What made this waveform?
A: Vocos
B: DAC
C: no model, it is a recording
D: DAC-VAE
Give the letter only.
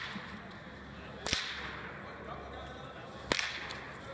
C